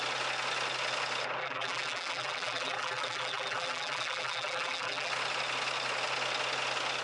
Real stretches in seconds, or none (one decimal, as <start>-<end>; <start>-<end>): 0.0-1.4; 5.1-7.0